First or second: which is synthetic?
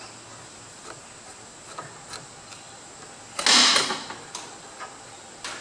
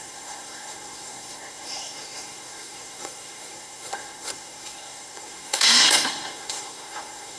second